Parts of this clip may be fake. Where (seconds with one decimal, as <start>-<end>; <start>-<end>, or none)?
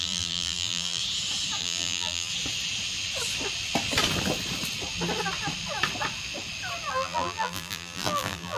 0.0-1.0; 1.6-2.3; 6.9-8.6